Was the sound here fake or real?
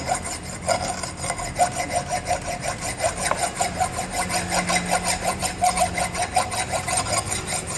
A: real